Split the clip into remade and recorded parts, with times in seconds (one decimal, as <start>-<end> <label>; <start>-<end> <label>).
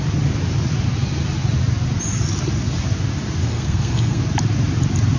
0.0-3.4 recorded; 3.4-4.2 remade; 4.2-5.2 recorded